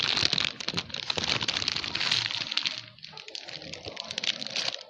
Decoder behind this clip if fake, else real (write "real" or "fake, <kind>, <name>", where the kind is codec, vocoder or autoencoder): real